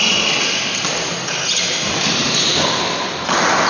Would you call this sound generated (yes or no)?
no